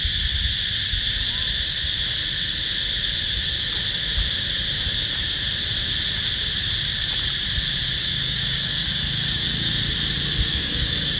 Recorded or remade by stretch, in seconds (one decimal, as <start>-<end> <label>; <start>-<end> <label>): 0.0-8.0 recorded; 8.0-9.7 remade; 9.7-10.5 recorded; 10.5-11.2 remade